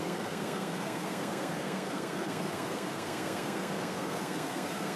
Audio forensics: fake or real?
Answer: fake